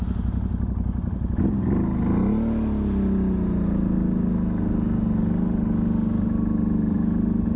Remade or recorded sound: recorded